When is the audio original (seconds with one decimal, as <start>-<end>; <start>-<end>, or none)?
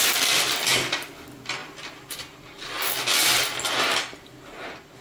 0.0-1.6; 3.6-5.0